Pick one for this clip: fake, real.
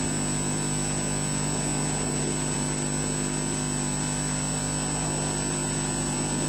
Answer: real